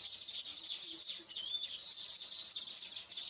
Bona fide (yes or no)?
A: yes